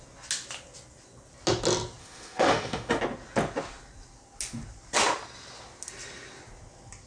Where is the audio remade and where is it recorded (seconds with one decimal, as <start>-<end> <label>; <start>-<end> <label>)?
0.0-2.0 recorded; 2.0-3.0 remade; 3.0-7.1 recorded